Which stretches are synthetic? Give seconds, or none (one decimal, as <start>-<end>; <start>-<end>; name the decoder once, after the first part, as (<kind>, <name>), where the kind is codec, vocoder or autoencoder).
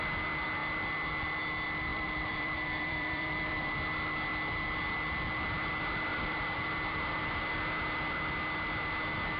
1.9-3.7 (vocoder, BigVGAN v2); 6.1-7.5